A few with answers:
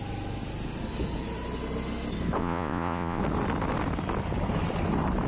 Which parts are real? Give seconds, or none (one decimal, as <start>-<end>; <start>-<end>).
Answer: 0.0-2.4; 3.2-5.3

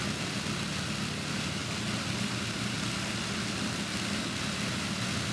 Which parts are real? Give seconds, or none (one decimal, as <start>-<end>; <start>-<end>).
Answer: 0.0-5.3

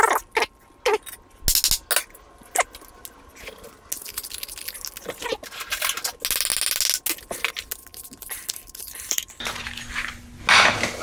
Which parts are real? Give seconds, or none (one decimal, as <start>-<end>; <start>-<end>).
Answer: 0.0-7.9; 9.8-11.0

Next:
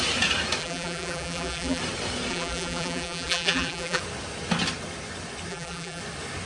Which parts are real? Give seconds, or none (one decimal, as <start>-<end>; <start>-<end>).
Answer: 0.0-0.6; 1.8-2.3; 4.0-5.5; 6.0-6.5